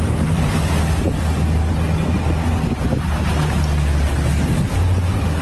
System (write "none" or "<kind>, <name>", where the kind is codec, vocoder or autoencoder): none